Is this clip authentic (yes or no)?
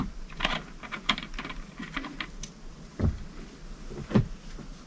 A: yes